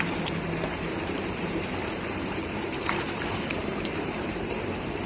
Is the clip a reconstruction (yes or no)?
yes